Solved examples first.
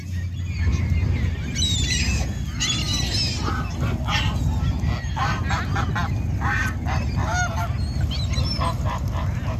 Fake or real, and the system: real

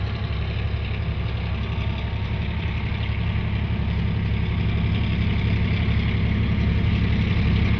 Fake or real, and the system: real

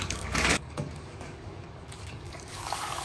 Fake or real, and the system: fake, codec, DAC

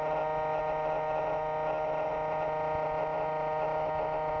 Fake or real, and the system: real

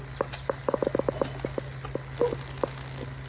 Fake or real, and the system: real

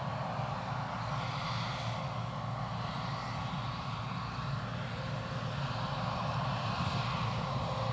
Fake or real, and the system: real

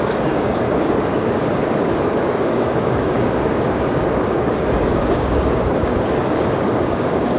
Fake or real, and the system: fake, codec, DAC